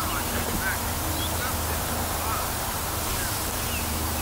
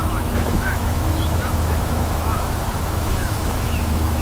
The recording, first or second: first